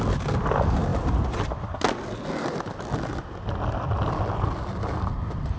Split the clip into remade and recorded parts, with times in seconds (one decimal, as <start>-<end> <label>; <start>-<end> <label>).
0.0-5.6 recorded

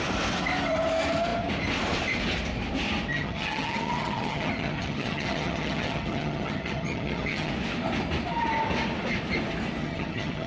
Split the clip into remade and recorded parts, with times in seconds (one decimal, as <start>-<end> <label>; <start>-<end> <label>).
0.0-3.1 recorded; 3.1-7.5 remade; 7.5-9.8 recorded; 9.8-10.5 remade

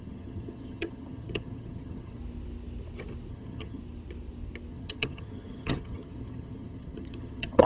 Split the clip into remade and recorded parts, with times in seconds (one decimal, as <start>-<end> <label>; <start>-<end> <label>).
0.0-2.2 remade; 2.2-3.3 recorded; 3.3-3.8 remade; 3.8-4.7 recorded; 4.7-7.7 remade

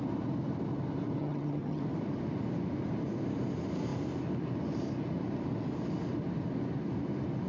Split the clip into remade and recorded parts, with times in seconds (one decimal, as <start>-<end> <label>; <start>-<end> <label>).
0.0-1.2 recorded; 1.2-1.8 remade; 1.8-7.5 recorded